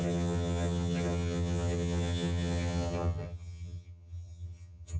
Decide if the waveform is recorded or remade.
remade